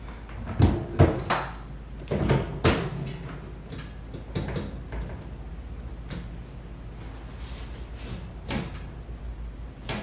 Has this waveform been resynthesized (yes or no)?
no